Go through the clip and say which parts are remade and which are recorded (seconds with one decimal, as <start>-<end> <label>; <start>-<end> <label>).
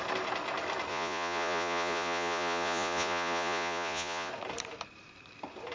0.0-0.9 recorded; 0.9-4.3 remade; 4.3-5.7 recorded